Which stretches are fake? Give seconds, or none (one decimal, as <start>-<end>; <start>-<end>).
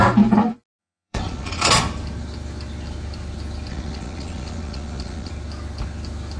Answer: 0.8-1.7; 3.7-5.3